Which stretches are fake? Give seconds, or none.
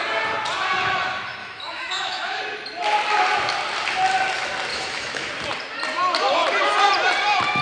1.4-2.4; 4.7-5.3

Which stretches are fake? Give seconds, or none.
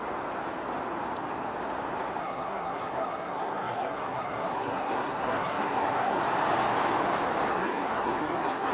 2.2-6.2; 7.5-8.7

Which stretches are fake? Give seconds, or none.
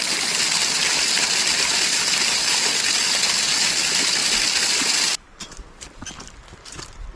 5.1-5.6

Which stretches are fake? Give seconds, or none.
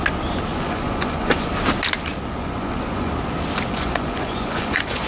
0.5-1.5; 2.4-3.1; 3.7-5.1